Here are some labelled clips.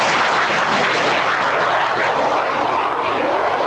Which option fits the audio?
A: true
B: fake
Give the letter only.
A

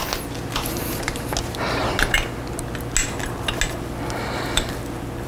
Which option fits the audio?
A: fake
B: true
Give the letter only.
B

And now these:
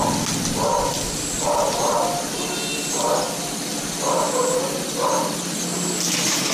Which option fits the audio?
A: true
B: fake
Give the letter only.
A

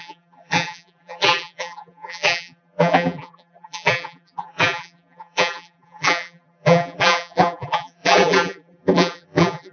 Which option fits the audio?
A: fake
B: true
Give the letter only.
A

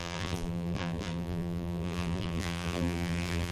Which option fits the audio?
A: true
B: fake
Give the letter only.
B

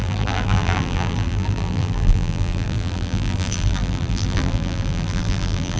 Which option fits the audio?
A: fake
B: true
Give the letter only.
A